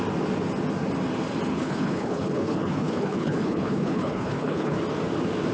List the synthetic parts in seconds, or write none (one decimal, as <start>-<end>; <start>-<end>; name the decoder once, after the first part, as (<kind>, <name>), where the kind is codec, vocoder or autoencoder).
1.5-4.8 (codec, HILCodec)